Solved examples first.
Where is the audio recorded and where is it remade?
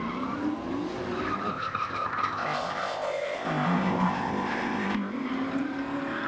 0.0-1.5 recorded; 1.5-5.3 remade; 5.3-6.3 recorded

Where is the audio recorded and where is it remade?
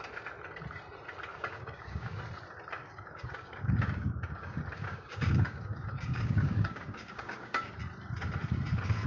0.0-1.3 recorded; 1.3-2.2 remade; 2.2-2.8 recorded; 2.8-7.7 remade; 7.7-9.1 recorded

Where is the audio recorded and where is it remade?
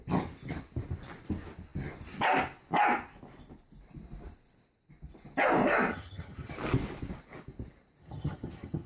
0.0-5.9 recorded; 5.9-6.5 remade; 6.5-8.0 recorded; 8.0-8.9 remade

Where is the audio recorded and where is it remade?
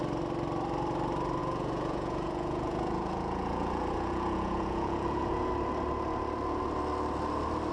0.0-1.4 recorded; 1.4-5.5 remade; 5.5-7.7 recorded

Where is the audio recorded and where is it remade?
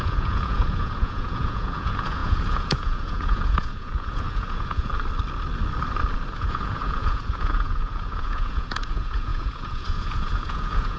0.0-4.9 remade; 4.9-6.3 recorded; 6.3-11.0 remade